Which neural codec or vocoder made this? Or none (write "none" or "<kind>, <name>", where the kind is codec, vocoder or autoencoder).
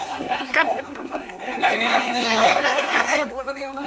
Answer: codec, SNAC